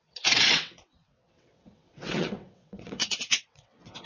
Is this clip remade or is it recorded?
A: remade